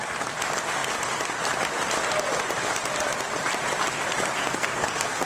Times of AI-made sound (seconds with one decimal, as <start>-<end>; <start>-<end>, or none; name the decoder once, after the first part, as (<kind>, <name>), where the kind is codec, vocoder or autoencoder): 4.4-5.3 (codec, SNAC)